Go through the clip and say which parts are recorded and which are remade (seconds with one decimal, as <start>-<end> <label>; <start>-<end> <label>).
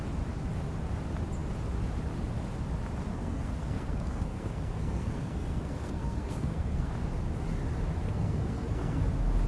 0.0-3.1 recorded; 3.1-6.9 remade; 6.9-8.0 recorded; 8.0-9.0 remade; 9.0-9.5 recorded